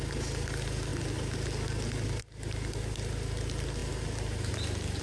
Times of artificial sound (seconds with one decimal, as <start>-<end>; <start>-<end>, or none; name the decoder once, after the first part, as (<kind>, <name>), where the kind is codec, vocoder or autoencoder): none